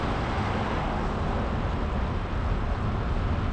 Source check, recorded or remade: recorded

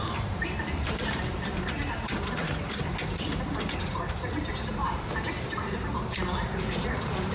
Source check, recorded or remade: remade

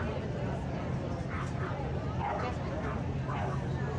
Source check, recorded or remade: recorded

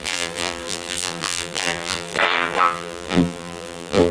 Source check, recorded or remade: remade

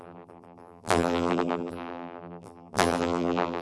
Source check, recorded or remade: remade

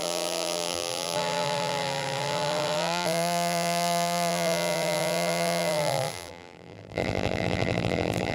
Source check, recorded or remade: remade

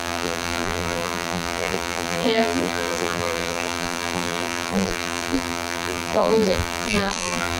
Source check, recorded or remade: remade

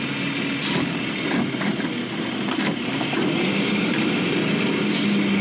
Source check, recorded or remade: recorded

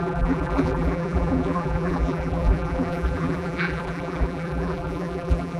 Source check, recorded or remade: remade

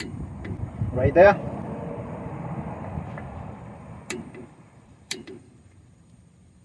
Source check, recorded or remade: remade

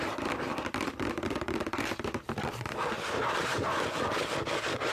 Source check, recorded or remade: remade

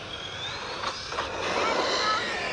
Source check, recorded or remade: recorded